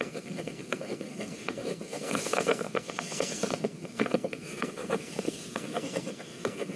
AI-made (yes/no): yes